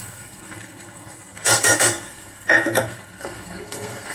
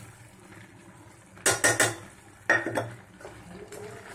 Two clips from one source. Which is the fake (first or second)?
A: first